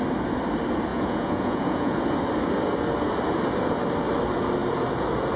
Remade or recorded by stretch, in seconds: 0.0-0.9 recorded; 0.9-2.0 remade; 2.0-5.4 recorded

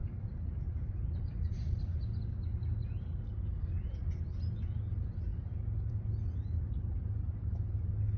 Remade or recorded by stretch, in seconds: 0.0-8.2 recorded

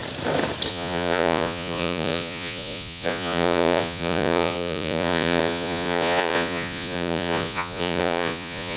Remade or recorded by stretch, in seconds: 0.0-0.7 recorded; 0.7-8.8 remade

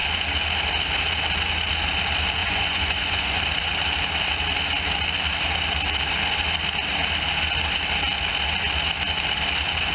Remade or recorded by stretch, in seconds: 0.0-2.4 recorded; 2.4-3.4 remade; 3.4-9.9 recorded